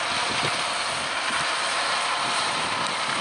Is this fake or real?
real